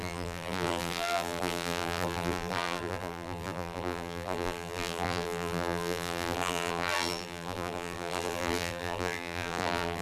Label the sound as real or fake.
fake